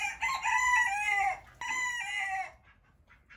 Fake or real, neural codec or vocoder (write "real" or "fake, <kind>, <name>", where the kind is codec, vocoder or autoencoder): real